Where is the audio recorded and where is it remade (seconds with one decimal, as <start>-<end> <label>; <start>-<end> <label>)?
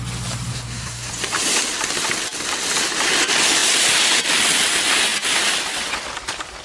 0.0-0.5 recorded; 0.5-1.1 remade; 1.1-6.6 recorded